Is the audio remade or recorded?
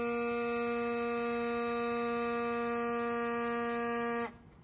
recorded